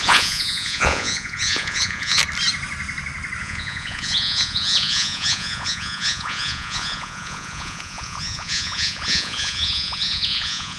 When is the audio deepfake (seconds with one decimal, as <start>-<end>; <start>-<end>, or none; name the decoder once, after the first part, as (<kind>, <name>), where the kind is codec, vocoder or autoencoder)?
0.0-2.2 (vocoder, Vocos); 3.4-10.8